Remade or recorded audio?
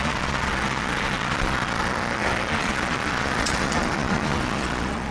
remade